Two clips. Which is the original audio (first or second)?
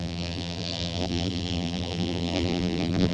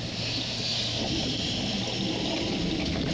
second